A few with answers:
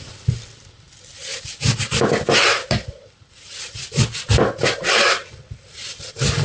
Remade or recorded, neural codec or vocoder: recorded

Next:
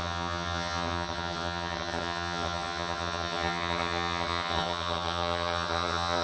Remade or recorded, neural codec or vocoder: remade, vocoder, HiFi-GAN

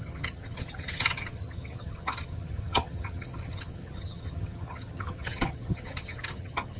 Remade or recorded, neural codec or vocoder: remade, vocoder, HiFi-GAN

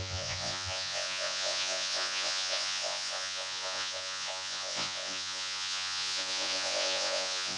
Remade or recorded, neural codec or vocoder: remade, vocoder, Vocos